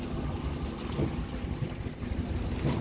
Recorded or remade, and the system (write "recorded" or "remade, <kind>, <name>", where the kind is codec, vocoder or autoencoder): recorded